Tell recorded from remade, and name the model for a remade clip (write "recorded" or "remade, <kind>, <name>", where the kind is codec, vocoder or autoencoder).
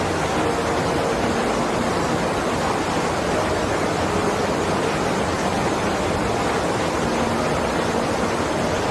recorded